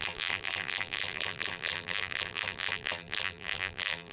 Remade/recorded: remade